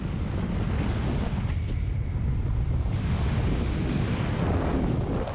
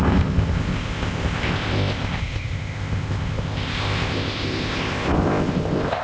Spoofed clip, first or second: second